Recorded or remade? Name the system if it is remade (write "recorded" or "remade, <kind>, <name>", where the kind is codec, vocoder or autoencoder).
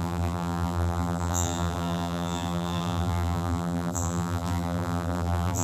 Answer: remade, vocoder, BigVGAN v2